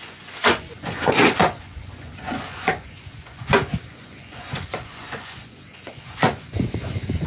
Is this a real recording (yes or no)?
no